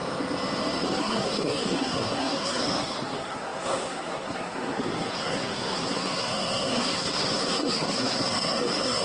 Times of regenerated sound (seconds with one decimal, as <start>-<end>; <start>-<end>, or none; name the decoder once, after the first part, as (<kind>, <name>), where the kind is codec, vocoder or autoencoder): 1.0-9.0 (codec, SNAC)